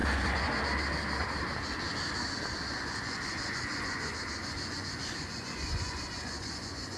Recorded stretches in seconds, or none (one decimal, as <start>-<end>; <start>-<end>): 0.6-2.7